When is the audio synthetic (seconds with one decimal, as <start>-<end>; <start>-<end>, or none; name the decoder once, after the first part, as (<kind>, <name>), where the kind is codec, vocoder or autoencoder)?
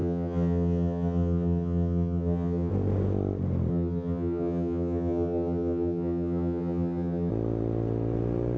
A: 0.0-2.7 (vocoder, HiFi-GAN); 3.7-7.3